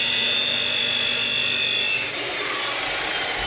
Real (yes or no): yes